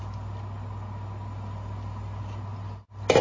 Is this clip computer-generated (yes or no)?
no